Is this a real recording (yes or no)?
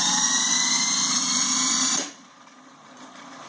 no